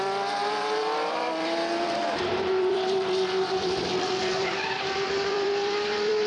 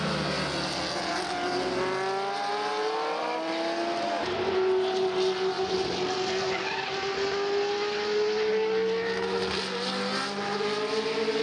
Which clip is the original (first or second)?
second